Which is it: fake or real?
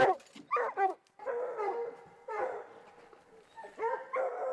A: real